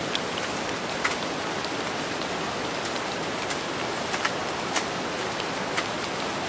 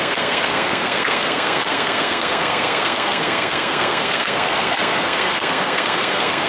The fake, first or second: second